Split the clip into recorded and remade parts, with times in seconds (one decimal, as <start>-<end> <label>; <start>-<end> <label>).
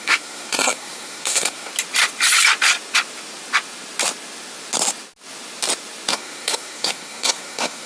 0.0-1.7 remade; 1.7-6.1 recorded; 6.1-7.9 remade